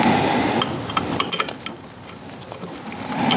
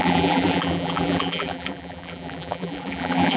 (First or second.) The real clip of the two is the first